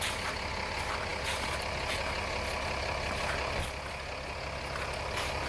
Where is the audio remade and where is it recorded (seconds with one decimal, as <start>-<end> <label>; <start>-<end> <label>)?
0.0-5.5 recorded